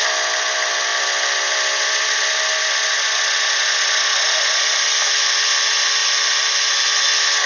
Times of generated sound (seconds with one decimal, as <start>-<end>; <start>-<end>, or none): none